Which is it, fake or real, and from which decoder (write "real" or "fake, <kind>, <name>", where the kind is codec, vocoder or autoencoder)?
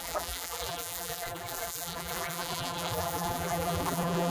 fake, vocoder, BigVGAN v2